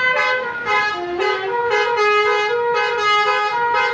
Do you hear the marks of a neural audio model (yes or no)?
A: no